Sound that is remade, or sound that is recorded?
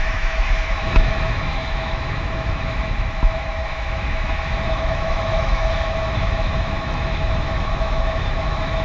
remade